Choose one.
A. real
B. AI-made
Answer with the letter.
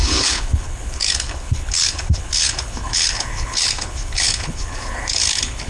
B